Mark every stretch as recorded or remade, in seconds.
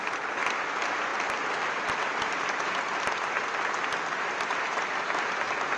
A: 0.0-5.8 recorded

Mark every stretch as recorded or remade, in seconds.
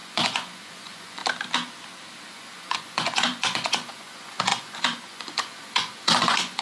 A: 0.0-1.2 remade; 1.2-2.3 recorded; 2.3-6.6 remade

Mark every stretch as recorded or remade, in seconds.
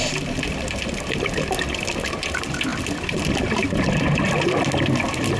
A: 0.0-5.4 recorded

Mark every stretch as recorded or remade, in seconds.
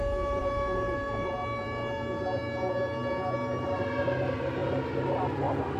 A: 0.0-0.4 recorded; 0.4-1.3 remade; 1.3-5.8 recorded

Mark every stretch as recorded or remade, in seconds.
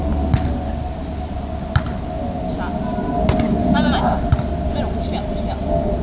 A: 0.0-6.0 recorded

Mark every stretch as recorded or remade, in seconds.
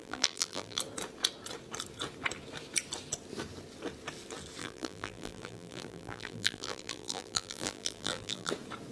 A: 0.0-0.8 remade; 0.8-4.6 recorded; 4.6-8.5 remade; 8.5-8.9 recorded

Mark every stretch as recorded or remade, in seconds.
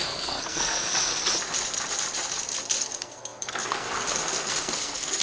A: 0.0-1.1 remade; 1.1-2.8 recorded; 2.8-5.2 remade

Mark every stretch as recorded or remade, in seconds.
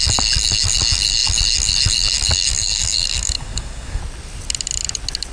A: 0.0-2.5 recorded; 2.5-4.0 remade; 4.0-5.3 recorded